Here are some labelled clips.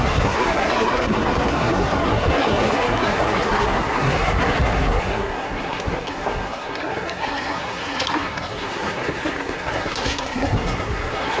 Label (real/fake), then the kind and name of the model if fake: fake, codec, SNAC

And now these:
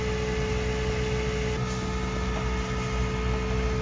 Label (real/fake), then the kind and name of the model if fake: real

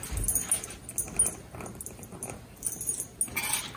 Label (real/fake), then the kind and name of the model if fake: real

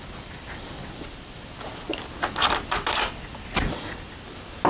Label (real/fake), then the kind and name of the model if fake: real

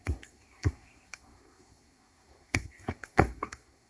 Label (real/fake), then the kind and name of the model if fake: fake, codec, SNAC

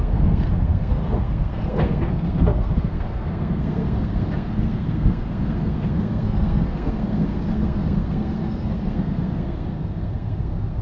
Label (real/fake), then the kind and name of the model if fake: fake, codec, SNAC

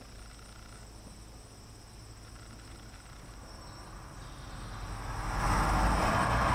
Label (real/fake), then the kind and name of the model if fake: real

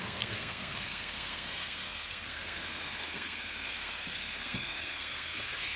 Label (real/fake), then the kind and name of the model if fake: fake, codec, SNAC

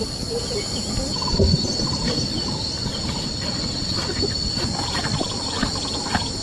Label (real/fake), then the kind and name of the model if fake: real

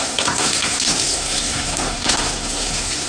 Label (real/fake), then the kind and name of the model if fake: fake, codec, SNAC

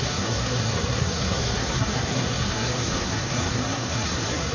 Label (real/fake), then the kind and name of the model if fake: fake, codec, SNAC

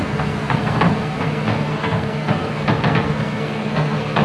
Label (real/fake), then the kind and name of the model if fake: fake, codec, SNAC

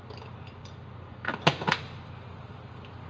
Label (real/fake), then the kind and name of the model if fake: real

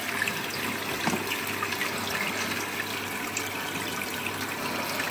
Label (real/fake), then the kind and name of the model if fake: real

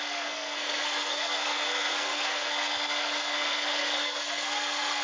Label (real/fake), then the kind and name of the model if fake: fake, codec, SNAC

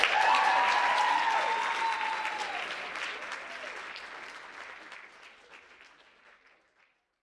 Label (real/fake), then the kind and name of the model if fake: real